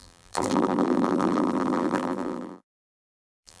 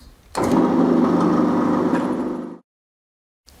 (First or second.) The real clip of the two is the second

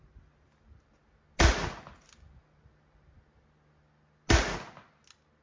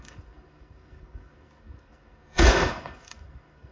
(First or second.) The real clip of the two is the first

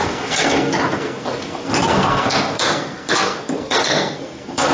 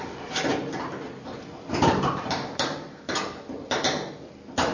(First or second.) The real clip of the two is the second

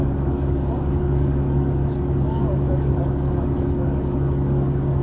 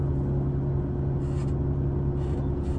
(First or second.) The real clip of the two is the second